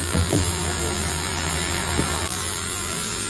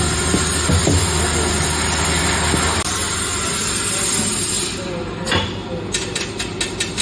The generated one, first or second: first